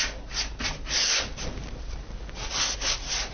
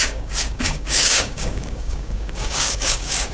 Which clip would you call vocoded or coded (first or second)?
second